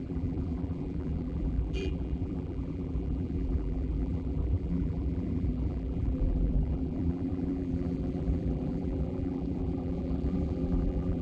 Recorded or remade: remade